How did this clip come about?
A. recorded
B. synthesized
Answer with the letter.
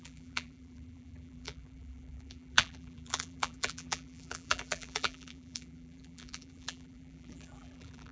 B